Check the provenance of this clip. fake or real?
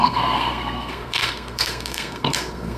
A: fake